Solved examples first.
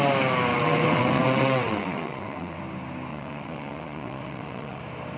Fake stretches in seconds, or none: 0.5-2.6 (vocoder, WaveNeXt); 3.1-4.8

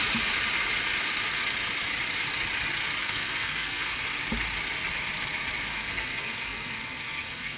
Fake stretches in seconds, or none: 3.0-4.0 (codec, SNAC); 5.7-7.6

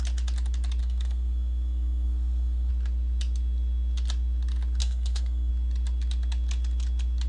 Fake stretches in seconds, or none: 0.8-2.7 (codec, SNAC); 4.8-5.5

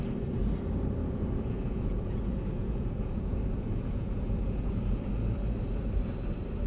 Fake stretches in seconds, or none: 1.0-5.0 (vocoder, Vocos)

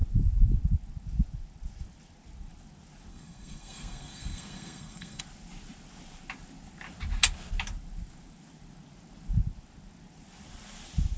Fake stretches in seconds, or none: 3.1-5.2 (codec, SNAC)

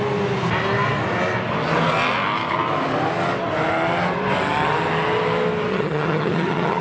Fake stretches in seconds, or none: 5.7-6.8 (vocoder, HiFi-GAN)

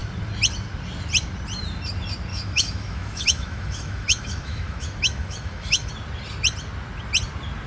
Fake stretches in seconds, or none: 2.3-5.9 (autoencoder, DAC-VAE)

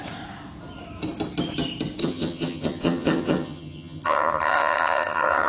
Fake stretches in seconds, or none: 2.0-5.5 (vocoder, HiFi-GAN)